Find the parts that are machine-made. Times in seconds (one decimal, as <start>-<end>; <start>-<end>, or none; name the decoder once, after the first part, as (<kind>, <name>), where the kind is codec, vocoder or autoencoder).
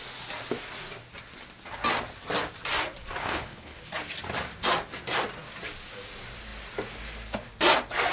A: 3.2-3.8 (codec, HILCodec)